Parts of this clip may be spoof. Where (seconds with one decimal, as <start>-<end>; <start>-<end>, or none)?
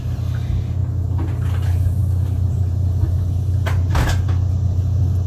none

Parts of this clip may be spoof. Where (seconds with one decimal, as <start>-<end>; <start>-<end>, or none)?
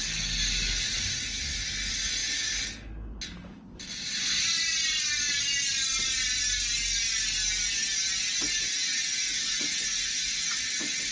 none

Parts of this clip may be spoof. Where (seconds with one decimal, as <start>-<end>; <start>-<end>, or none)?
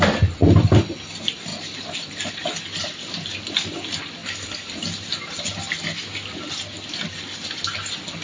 none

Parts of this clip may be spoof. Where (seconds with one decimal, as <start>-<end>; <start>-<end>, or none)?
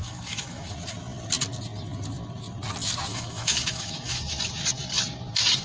0.0-0.7; 3.1-4.2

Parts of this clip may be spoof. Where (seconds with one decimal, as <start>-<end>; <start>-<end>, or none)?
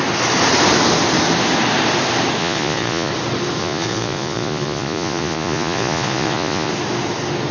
2.4-3.1; 3.6-6.7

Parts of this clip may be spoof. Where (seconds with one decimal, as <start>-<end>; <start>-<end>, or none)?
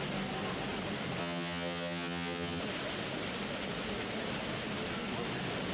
1.2-2.6